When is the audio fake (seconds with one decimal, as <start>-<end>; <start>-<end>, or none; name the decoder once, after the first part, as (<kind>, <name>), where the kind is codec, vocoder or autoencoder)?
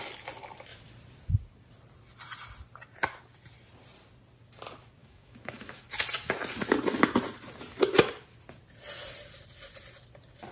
5.0-5.8 (autoencoder, DAC-VAE)